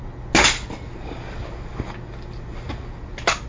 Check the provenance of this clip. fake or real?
real